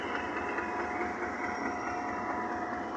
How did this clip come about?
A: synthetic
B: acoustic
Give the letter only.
B